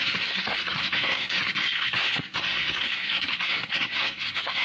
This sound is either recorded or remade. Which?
remade